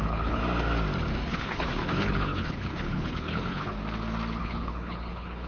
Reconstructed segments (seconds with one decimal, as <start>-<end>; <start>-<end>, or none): 0.0-0.4; 1.3-3.8; 4.4-5.5